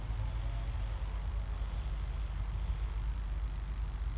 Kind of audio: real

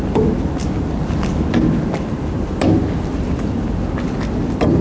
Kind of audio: real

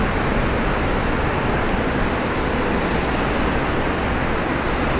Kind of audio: real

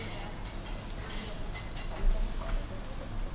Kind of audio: real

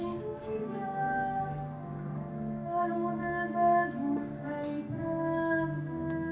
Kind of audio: fake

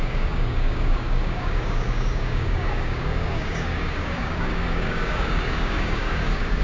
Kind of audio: fake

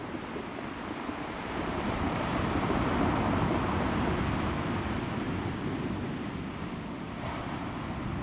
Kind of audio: real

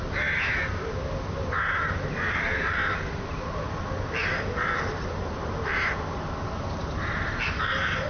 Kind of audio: real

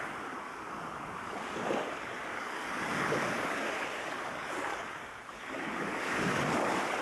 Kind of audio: fake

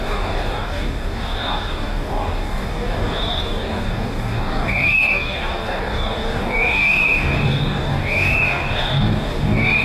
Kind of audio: fake